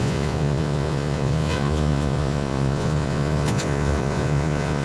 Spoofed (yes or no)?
yes